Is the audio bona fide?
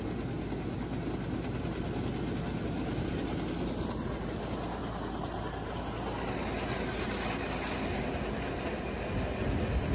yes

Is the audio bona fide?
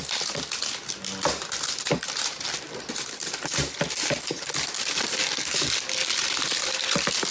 yes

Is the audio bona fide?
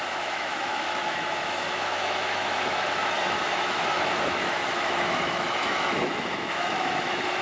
no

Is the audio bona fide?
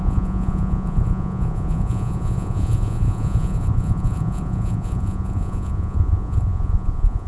no